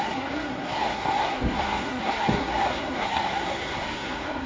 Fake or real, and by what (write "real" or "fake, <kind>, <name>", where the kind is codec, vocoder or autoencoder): fake, codec, SNAC